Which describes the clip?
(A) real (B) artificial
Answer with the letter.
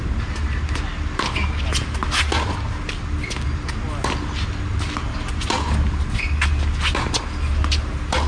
A